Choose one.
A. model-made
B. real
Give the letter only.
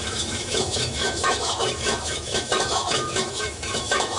A